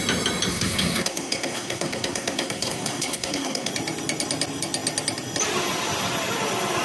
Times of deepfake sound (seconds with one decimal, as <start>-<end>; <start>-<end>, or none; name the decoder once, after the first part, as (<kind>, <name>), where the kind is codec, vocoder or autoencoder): 0.5-3.7 (codec, SNAC)